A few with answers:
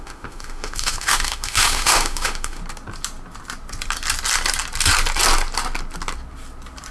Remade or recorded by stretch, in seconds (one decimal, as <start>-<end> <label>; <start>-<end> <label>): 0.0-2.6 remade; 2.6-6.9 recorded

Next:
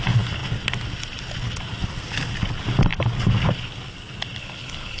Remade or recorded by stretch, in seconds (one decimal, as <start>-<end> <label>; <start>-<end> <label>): 0.0-4.4 recorded; 4.4-5.0 remade

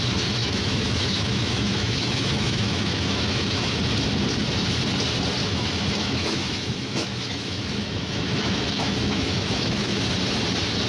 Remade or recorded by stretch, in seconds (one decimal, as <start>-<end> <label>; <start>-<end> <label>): 0.0-0.4 recorded; 0.4-3.8 remade; 3.8-5.4 recorded; 5.4-10.0 remade; 10.0-10.9 recorded

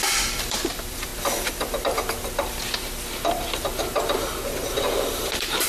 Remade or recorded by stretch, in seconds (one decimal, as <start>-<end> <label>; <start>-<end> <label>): 0.0-1.1 remade; 1.1-4.5 recorded; 4.5-5.7 remade

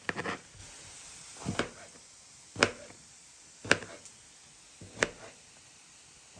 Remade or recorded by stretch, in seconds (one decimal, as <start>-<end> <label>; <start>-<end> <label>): 0.0-6.4 recorded